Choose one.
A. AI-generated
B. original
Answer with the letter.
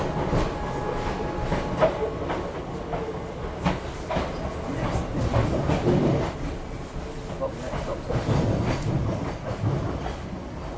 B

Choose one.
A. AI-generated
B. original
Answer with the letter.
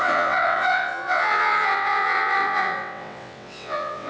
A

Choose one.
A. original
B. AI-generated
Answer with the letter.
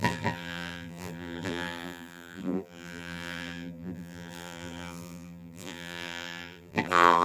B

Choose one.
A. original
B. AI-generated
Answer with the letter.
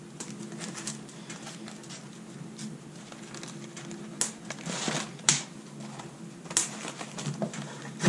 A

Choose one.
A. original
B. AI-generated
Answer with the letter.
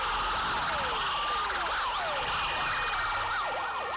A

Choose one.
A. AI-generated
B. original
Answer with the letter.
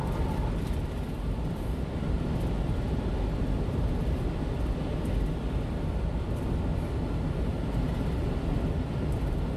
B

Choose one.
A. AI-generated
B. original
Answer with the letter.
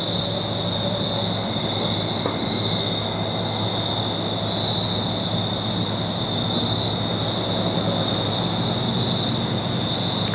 B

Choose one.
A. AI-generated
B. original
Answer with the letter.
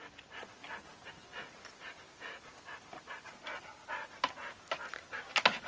B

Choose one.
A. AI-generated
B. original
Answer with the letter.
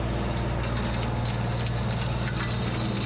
B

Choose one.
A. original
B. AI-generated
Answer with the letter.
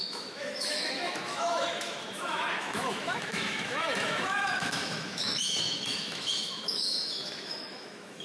B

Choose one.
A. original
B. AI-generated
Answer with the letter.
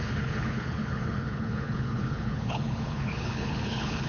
B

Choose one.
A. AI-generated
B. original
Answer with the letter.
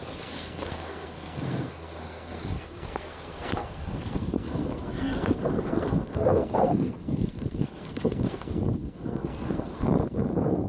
A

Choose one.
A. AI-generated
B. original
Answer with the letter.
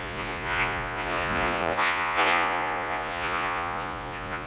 A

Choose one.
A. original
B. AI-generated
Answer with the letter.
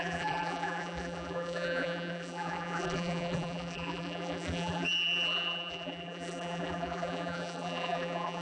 B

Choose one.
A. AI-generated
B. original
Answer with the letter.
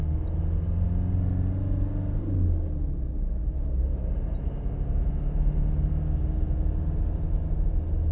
B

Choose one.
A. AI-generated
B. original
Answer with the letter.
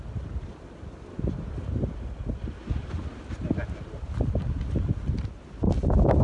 B